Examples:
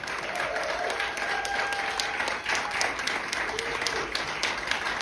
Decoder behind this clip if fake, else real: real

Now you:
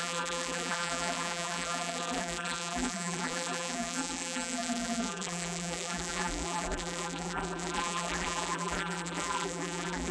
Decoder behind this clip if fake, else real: fake, vocoder, BigVGAN v2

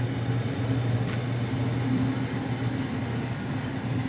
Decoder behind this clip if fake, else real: real